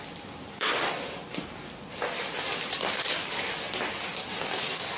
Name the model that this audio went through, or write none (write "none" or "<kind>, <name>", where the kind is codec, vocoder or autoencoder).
vocoder, BigVGAN v2